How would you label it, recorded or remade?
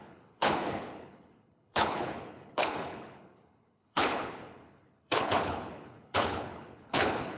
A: remade